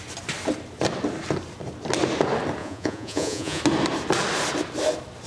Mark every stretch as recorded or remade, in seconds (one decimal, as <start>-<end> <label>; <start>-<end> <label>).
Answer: 0.0-2.6 recorded; 2.6-3.6 remade; 3.6-5.3 recorded

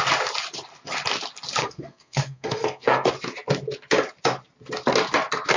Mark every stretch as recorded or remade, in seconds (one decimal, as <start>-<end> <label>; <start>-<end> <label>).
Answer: 0.0-1.6 recorded; 1.6-3.1 remade; 3.1-5.6 recorded